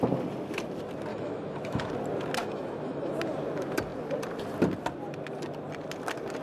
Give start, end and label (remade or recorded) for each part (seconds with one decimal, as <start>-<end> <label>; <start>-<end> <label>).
0.0-1.1 recorded; 1.1-1.9 remade; 1.9-2.4 recorded; 2.4-3.2 remade; 3.2-6.4 recorded